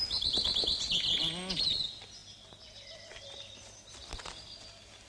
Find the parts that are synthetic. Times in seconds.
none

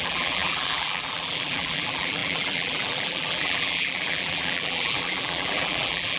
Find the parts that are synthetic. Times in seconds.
0.0-6.2 (vocoder, BigVGAN v2)

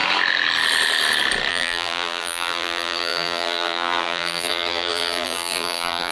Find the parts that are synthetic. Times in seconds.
1.5-6.1 (vocoder, BigVGAN v2)

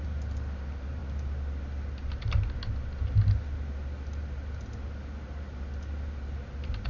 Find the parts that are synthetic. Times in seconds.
none